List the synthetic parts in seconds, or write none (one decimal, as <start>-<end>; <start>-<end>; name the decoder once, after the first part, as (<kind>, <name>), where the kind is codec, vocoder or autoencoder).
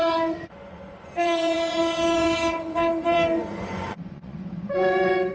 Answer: 0.0-5.3 (vocoder, Vocos)